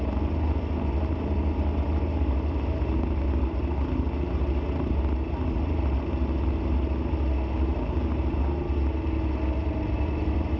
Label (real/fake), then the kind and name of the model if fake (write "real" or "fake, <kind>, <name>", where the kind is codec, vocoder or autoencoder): real